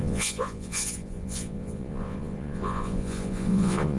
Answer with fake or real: fake